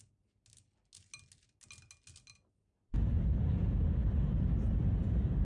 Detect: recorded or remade recorded